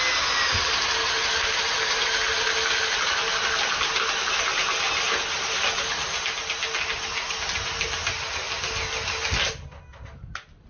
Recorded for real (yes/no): yes